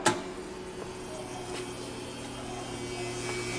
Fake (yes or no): no